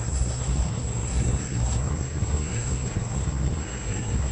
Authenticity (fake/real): fake